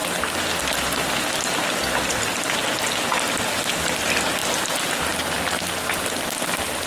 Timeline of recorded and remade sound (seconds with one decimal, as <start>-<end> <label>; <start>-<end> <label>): 0.0-6.9 recorded